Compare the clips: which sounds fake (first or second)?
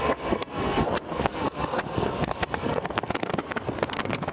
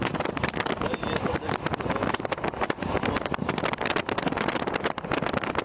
first